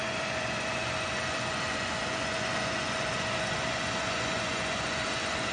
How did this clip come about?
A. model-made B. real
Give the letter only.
A